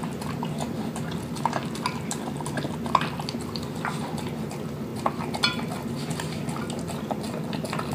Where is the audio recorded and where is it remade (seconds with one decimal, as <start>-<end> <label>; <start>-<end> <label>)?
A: 0.0-7.9 recorded